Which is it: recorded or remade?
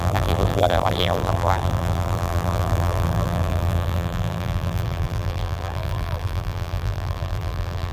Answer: remade